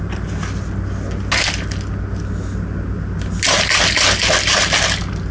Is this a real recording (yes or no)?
yes